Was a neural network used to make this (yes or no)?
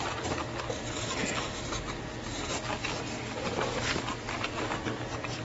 no